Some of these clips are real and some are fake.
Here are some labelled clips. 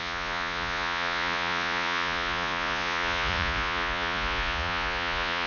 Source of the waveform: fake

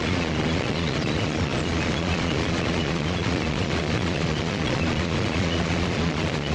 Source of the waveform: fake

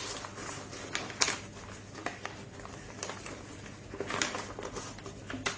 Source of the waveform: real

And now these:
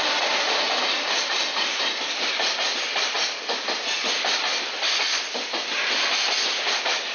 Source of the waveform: real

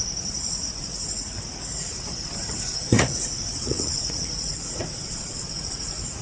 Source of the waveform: fake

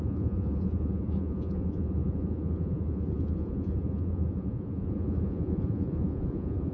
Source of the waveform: fake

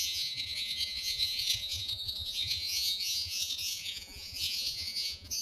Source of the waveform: fake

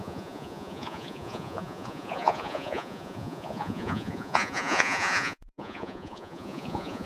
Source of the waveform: fake